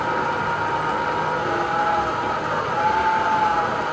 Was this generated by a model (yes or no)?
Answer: no